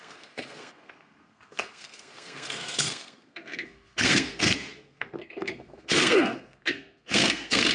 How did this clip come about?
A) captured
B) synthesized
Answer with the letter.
B